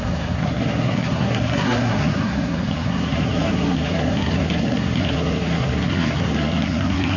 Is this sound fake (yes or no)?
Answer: yes